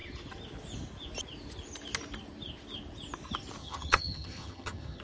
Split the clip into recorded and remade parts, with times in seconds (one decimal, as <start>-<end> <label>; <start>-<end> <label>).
0.0-3.6 recorded; 3.6-5.0 remade